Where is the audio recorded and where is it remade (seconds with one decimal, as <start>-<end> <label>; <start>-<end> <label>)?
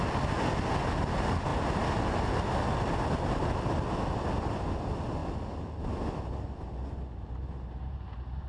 0.0-8.5 recorded